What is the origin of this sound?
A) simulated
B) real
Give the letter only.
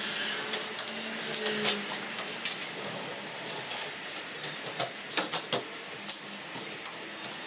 B